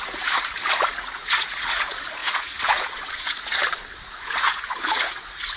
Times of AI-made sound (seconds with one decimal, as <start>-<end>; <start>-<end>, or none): 0.0-3.6; 4.1-5.6